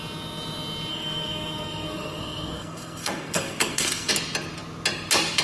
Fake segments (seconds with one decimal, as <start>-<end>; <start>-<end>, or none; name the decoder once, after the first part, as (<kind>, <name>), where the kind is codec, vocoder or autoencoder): 0.9-4.1 (codec, SNAC)